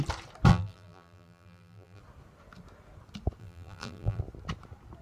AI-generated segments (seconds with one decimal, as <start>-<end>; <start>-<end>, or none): 0.5-2.0; 3.4-4.2